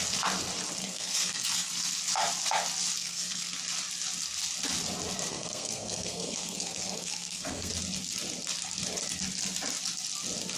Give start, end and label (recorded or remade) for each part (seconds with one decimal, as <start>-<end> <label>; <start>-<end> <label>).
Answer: 0.0-0.8 recorded; 0.8-1.7 remade; 1.7-3.0 recorded; 3.0-3.5 remade; 3.5-5.3 recorded; 5.3-7.7 remade; 7.7-10.6 recorded